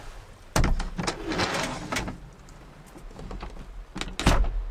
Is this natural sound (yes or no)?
yes